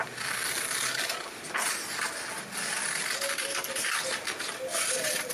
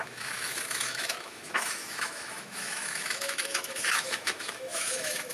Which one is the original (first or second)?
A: first